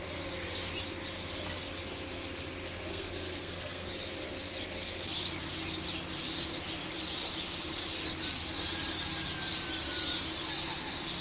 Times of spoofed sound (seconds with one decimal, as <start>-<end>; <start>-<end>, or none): 2.9-3.9